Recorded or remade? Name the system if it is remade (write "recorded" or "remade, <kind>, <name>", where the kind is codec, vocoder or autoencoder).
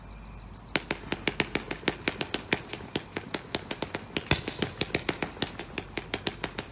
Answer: recorded